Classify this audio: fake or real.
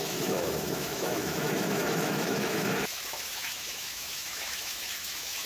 fake